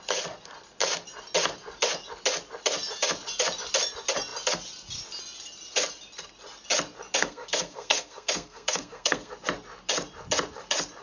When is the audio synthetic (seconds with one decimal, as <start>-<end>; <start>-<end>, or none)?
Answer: 7.2-9.3